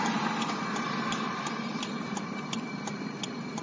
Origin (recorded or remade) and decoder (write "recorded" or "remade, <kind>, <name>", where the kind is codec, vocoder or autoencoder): remade, vocoder, BigVGAN v2